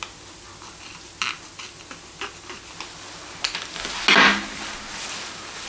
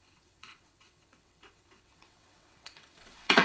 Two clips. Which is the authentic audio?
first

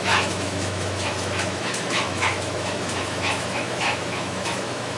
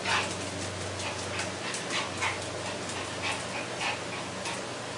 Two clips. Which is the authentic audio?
second